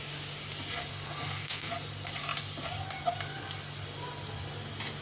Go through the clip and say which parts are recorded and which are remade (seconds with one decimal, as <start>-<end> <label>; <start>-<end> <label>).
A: 0.0-0.9 recorded; 0.9-1.7 remade; 1.7-5.0 recorded